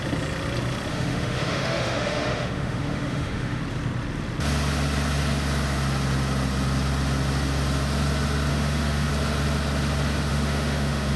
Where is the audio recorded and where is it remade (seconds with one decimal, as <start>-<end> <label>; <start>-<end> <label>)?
0.0-0.9 recorded; 0.9-3.6 remade; 3.6-8.5 recorded; 8.5-9.1 remade; 9.1-10.3 recorded; 10.3-11.2 remade